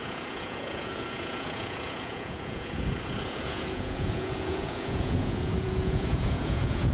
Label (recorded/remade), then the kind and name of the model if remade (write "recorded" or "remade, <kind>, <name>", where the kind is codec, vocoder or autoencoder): remade, vocoder, Vocos